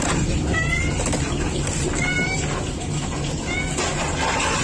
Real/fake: real